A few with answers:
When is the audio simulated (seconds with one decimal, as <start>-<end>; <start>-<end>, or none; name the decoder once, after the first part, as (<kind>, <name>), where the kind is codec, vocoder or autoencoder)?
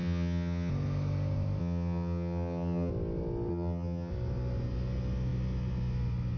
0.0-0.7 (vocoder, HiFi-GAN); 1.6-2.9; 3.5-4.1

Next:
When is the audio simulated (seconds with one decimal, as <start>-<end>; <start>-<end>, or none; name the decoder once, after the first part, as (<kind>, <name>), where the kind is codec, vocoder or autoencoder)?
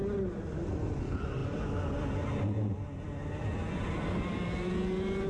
none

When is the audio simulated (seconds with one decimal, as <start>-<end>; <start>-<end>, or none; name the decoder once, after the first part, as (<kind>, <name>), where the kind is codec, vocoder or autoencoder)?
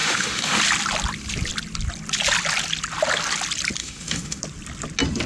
0.0-0.6 (autoencoder, DAC-VAE); 3.8-4.4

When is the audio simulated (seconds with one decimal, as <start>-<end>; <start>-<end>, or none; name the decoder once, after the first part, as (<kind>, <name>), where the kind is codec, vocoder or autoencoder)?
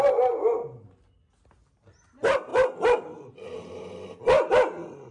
none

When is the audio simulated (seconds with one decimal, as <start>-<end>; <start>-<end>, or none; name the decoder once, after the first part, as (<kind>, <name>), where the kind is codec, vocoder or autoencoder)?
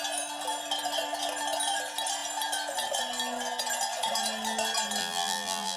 5.0-5.8 (vocoder, BigVGAN v2)